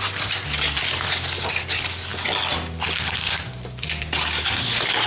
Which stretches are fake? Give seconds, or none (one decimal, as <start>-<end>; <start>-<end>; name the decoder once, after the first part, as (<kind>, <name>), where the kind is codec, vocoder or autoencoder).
none